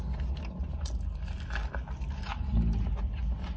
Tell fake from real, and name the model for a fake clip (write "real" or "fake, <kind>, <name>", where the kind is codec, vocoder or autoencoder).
real